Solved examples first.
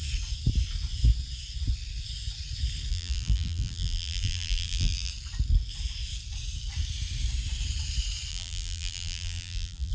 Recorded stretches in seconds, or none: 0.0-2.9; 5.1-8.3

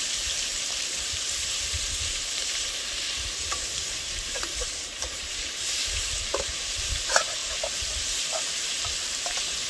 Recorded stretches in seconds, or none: none